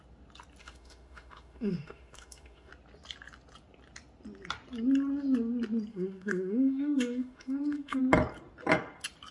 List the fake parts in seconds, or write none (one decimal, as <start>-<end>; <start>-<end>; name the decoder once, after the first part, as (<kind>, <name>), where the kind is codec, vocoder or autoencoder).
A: 0.6-2.7 (autoencoder, DAC-VAE); 5.9-8.0